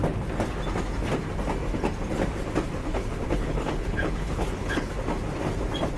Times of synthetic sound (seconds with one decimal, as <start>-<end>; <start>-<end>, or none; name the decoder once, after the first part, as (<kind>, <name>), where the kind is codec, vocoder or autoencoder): 2.8-4.9 (codec, HILCodec)